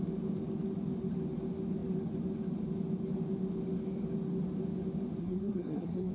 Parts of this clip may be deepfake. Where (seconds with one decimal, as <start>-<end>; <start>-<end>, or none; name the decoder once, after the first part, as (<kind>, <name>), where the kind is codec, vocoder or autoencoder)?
5.2-6.1 (codec, SNAC)